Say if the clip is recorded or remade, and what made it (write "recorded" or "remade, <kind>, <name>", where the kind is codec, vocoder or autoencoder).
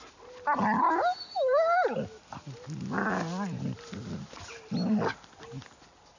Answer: recorded